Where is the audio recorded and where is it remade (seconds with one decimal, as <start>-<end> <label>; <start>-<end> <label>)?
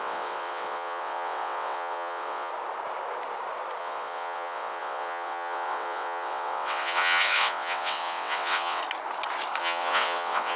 0.0-2.5 remade; 2.5-3.8 recorded; 3.8-8.8 remade; 8.8-9.6 recorded; 9.6-10.6 remade